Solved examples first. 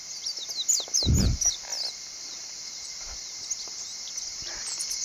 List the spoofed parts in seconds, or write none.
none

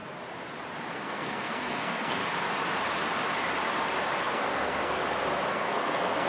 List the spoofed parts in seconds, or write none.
0.9-2.2 (codec, SNAC); 4.2-5.0; 5.5-6.3

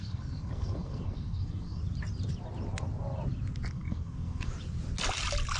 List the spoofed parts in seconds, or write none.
0.0-1.8 (codec, SNAC); 3.7-4.5